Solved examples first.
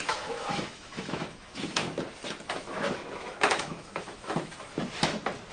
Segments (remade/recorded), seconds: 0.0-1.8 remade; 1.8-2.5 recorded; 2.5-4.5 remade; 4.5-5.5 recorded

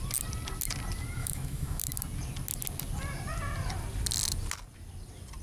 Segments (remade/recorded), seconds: 0.0-1.2 recorded; 1.2-1.8 remade; 1.8-5.4 recorded

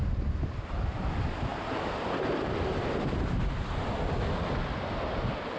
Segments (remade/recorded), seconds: 0.0-5.6 recorded

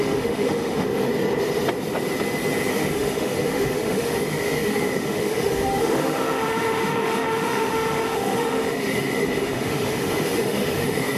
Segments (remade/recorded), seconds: 0.0-1.1 remade; 1.1-2.7 recorded; 2.7-11.2 remade